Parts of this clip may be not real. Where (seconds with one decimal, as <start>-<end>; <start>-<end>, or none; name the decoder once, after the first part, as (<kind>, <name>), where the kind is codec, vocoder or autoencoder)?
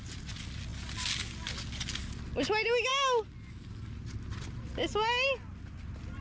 none